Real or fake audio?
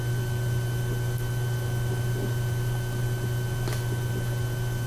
real